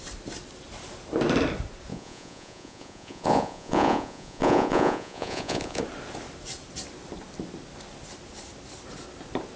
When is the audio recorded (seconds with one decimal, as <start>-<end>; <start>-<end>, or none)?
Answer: 0.0-1.9; 5.8-9.6